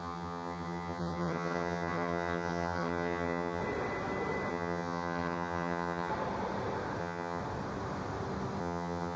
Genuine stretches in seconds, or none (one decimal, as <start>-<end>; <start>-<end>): 3.6-4.5; 6.1-7.0; 7.4-8.6